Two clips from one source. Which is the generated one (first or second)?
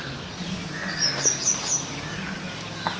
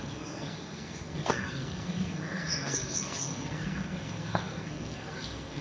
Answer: second